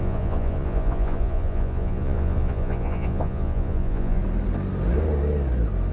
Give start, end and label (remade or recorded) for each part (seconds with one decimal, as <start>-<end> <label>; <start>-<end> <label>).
0.0-4.2 remade; 4.2-5.9 recorded